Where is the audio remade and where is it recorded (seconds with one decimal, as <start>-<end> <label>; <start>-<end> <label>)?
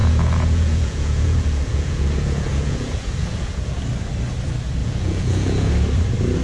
0.0-3.8 remade; 3.8-4.8 recorded; 4.8-5.7 remade; 5.7-6.4 recorded